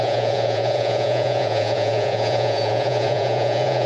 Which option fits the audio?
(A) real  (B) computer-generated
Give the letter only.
B